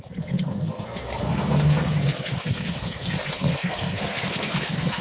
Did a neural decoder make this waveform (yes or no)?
yes